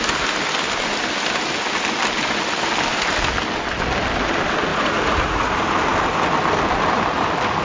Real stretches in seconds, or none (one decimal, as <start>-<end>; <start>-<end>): 0.0-4.7; 5.5-7.6